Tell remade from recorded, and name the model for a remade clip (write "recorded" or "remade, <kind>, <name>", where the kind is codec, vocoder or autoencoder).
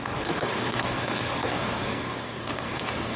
remade, codec, SNAC